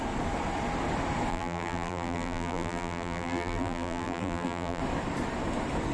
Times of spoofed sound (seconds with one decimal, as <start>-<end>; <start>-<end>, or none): 1.3-4.8